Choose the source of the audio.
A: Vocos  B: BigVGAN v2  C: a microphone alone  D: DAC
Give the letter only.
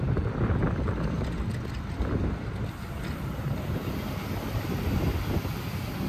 C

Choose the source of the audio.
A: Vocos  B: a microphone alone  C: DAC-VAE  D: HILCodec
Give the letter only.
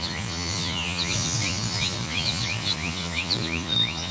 A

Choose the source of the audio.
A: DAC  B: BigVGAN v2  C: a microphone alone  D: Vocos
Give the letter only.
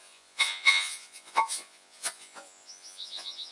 D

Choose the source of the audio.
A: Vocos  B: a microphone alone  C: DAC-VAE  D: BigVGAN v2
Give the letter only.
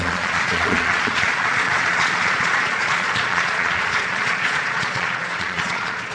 A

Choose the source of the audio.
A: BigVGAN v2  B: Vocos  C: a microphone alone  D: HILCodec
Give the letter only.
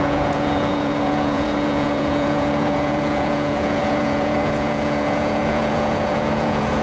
B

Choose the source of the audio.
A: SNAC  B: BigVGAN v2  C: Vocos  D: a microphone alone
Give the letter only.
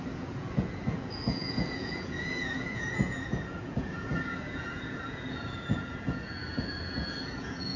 C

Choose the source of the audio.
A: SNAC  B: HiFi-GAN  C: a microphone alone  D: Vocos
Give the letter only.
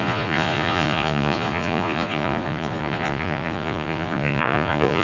D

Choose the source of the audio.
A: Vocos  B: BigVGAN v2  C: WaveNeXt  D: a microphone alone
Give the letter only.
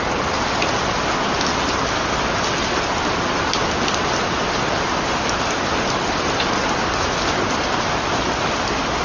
D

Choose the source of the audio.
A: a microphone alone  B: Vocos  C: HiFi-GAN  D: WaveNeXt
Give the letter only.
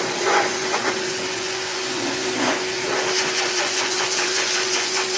B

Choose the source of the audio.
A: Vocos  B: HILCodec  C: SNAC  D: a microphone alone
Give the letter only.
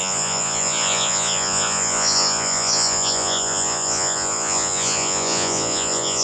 A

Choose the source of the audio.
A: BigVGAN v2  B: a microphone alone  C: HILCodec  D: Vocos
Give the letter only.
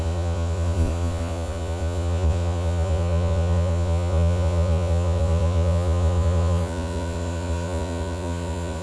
D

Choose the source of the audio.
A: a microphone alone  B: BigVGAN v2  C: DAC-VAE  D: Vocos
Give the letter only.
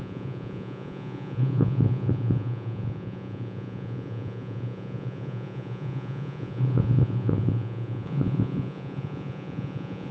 D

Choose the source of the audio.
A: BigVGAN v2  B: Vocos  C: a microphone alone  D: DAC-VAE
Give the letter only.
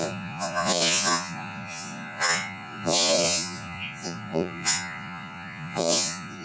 B